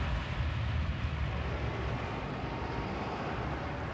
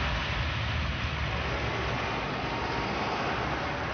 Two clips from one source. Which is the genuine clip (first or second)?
second